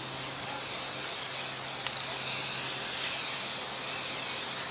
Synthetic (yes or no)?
no